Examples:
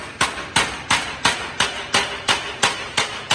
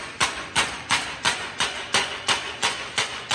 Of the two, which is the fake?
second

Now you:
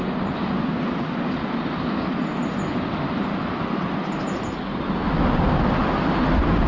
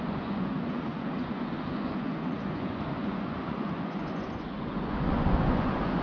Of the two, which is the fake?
second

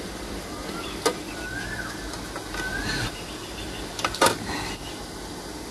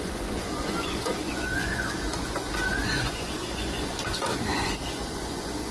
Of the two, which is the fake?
second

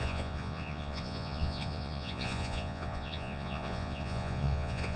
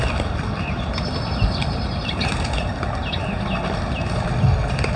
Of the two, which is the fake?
first